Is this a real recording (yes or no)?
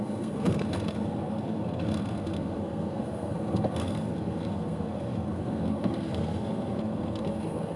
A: no